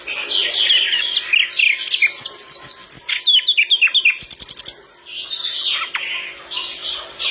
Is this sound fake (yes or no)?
no